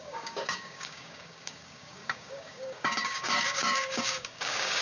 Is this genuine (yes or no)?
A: no